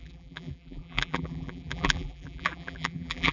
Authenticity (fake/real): fake